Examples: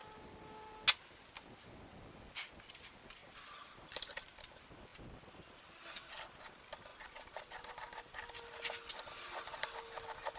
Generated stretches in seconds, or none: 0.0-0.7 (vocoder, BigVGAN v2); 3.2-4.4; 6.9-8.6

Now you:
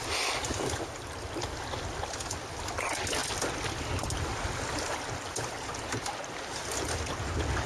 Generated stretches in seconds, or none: none

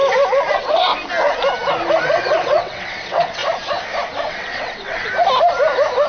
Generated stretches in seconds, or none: 0.5-0.9 (vocoder, WaveNeXt); 2.0-3.4; 4.3-5.1

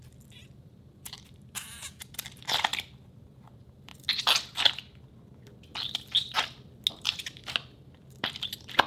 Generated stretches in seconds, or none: 0.0-3.9 (vocoder, BigVGAN v2); 6.9-8.9

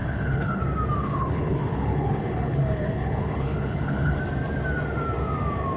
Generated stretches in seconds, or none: 0.0-0.6 (codec, HILCodec); 1.0-4.2

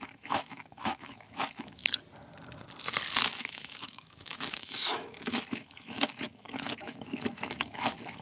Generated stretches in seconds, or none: 0.0-1.8 (autoencoder, DAC-VAE); 3.4-8.2

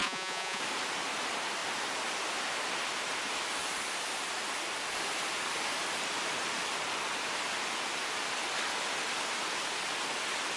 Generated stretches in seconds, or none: 0.0-0.6 (vocoder, Vocos)

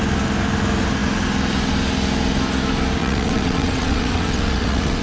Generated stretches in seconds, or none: 3.0-5.0 (vocoder, WaveNeXt)